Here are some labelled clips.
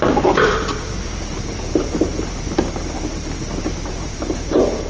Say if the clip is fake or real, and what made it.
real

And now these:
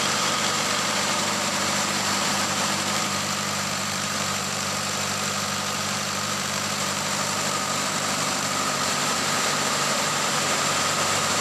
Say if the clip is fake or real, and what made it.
fake, vocoder, BigVGAN v2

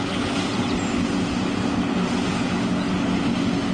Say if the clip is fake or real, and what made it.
real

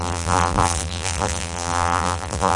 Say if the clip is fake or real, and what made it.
fake, vocoder, BigVGAN v2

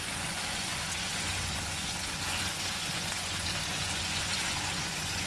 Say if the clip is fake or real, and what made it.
fake, vocoder, Vocos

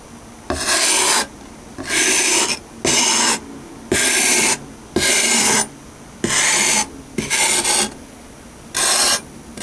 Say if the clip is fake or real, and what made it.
real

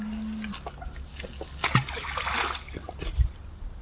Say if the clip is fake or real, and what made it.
real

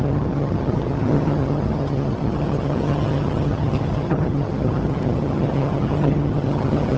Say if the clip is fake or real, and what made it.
fake, vocoder, HiFi-GAN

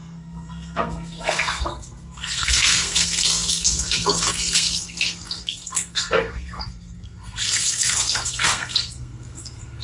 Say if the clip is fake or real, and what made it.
fake, codec, SNAC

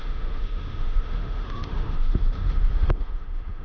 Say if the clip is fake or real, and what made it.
fake, autoencoder, DAC-VAE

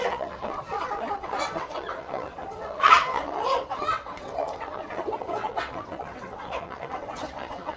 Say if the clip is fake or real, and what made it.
fake, vocoder, WaveNeXt